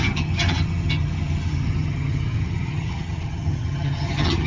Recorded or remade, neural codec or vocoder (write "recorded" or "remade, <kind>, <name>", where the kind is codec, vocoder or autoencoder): remade, vocoder, HiFi-GAN